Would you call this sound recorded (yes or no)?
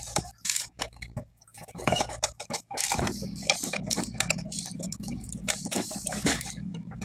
no